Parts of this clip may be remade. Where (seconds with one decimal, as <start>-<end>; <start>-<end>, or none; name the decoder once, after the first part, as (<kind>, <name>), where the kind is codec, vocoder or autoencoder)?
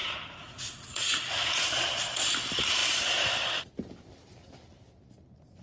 0.0-1.7 (vocoder, Vocos)